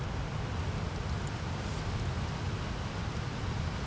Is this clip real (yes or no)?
yes